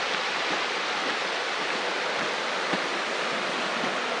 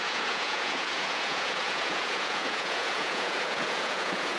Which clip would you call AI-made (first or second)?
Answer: second